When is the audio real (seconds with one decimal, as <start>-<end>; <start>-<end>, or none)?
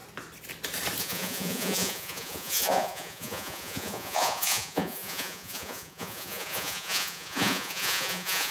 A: 0.0-1.0